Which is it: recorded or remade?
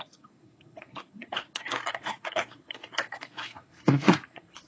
remade